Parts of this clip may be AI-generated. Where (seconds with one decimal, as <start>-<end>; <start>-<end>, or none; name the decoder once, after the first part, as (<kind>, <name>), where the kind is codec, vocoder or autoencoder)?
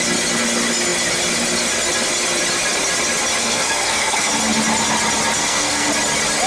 3.4-4.3 (codec, SNAC); 5.4-5.9